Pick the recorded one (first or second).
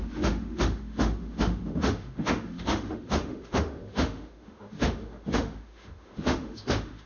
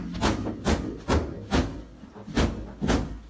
second